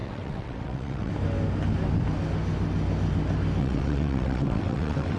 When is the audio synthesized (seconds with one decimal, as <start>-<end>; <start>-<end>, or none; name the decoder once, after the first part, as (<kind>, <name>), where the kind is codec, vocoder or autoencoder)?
0.0-1.1 (vocoder, WaveNeXt); 3.6-5.2